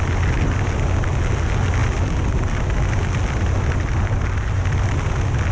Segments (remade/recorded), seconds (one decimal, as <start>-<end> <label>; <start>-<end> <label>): 0.0-5.5 recorded